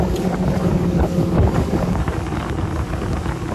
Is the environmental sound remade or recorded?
remade